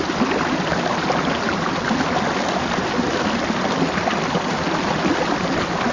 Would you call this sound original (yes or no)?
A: yes